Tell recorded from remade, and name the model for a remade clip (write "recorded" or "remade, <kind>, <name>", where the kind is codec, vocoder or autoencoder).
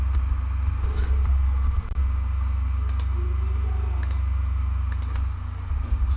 recorded